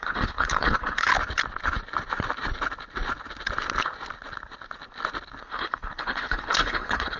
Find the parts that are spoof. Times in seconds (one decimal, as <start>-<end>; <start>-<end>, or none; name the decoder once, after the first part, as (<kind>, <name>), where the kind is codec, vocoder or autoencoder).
0.0-1.1 (codec, HILCodec); 5.4-7.2